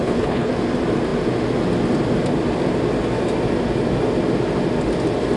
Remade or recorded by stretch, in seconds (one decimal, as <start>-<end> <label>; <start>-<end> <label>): 0.0-0.5 remade; 0.5-5.4 recorded

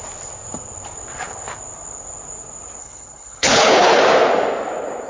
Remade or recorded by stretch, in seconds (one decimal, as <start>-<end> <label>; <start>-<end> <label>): 0.0-2.8 recorded; 2.8-4.0 remade; 4.0-5.1 recorded